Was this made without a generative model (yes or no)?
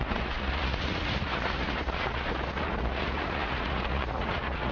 no